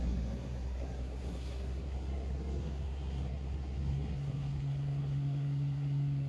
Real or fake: fake